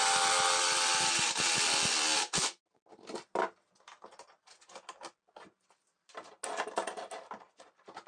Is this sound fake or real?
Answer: real